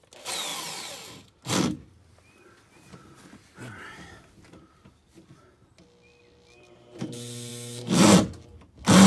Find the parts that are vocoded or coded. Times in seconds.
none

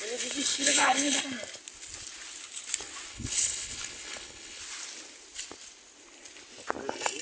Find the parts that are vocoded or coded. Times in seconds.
0.5-1.2 (codec, HILCodec); 3.1-4.6

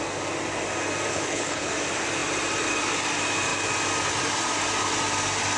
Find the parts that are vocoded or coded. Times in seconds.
1.1-1.7 (codec, HILCodec)

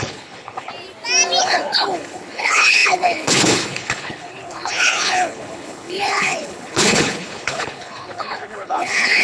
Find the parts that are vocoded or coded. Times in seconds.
0.0-0.7 (codec, HILCodec); 1.4-9.2

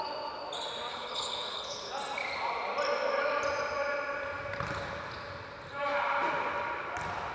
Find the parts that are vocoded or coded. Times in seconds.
0.9-1.9 (codec, HILCodec)